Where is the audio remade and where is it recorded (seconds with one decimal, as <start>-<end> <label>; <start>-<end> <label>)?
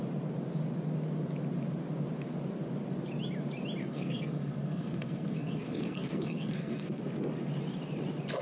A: 0.0-3.8 recorded; 3.8-7.0 remade; 7.0-8.4 recorded